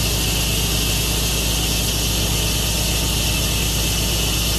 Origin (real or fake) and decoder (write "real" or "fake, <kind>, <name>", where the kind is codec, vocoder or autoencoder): real